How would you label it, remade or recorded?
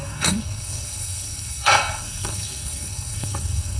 remade